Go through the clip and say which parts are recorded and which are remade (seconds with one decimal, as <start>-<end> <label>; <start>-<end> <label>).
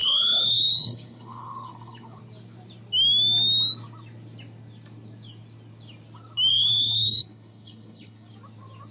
0.0-2.2 remade; 2.2-6.5 recorded; 6.5-8.3 remade; 8.3-8.9 recorded